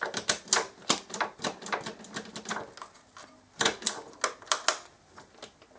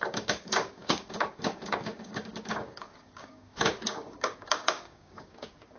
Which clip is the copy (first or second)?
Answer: second